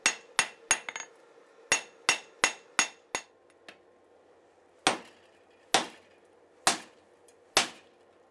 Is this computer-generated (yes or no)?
no